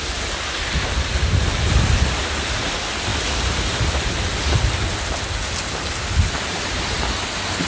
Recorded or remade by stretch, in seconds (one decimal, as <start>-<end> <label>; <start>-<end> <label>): 0.0-7.7 recorded